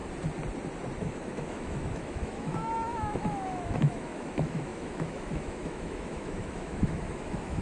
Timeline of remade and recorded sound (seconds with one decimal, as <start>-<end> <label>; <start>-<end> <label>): 0.0-1.0 recorded; 1.0-7.6 remade

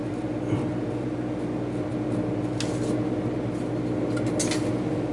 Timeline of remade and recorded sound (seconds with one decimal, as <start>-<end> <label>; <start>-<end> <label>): 0.0-5.1 recorded

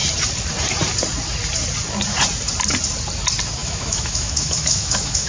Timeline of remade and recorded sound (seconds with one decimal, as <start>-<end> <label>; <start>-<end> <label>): 0.0-3.6 recorded; 3.6-5.3 remade

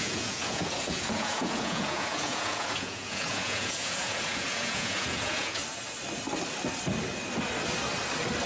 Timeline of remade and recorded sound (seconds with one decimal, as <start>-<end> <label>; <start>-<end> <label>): 0.0-5.6 remade; 5.6-8.5 recorded

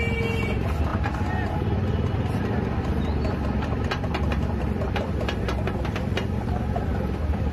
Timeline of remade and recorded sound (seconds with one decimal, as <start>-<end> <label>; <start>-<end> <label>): 0.0-7.5 recorded